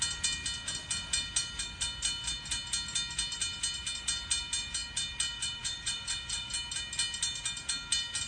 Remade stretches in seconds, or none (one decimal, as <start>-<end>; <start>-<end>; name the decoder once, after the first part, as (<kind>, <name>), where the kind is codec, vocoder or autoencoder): 5.6-6.5 (vocoder, Vocos)